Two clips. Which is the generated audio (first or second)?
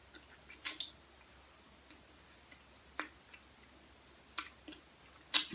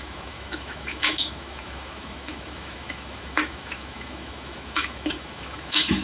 second